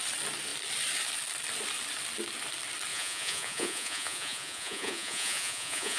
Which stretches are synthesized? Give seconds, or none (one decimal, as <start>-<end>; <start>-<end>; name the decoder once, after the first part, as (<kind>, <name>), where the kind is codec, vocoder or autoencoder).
2.9-6.0 (vocoder, Vocos)